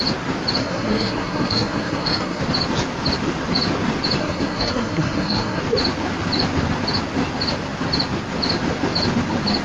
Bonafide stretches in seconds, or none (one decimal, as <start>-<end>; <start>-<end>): 0.0-0.6; 2.4-4.2; 5.6-9.6